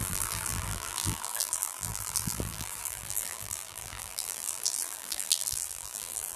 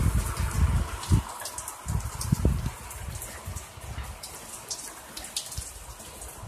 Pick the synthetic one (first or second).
first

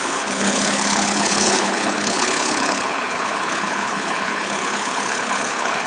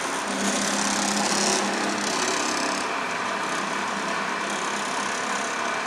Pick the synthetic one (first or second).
first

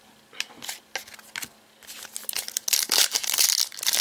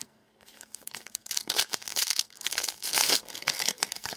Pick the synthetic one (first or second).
second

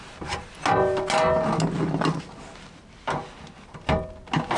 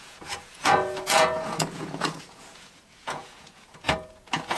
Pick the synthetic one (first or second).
second